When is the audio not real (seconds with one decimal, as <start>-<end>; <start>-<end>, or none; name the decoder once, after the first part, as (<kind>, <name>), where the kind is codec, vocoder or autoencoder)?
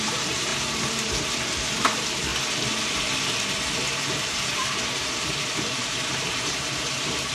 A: 0.0-2.3 (vocoder, BigVGAN v2); 4.1-7.3